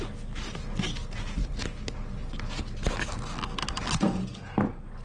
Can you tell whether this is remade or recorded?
recorded